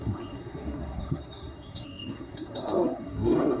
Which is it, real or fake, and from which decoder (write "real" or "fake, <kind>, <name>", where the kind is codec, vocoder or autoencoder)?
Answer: fake, codec, SNAC